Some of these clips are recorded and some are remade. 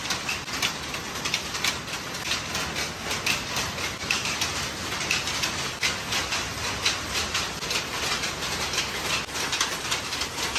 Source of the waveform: recorded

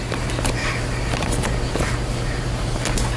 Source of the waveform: recorded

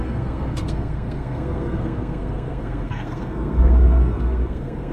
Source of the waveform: remade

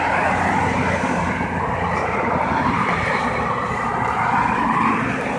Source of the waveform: recorded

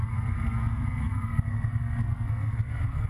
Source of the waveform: remade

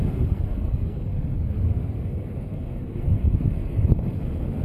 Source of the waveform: remade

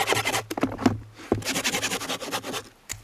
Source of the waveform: recorded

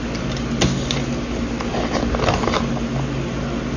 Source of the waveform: recorded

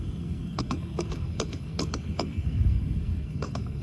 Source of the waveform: remade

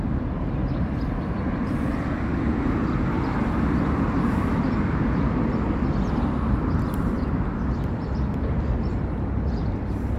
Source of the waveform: recorded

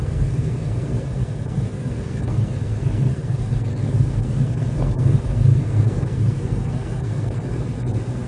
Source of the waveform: remade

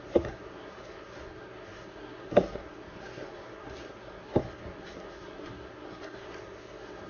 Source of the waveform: remade